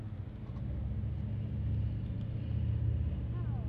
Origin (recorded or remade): recorded